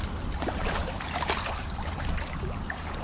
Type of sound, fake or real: fake